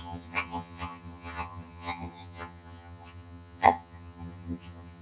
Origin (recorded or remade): remade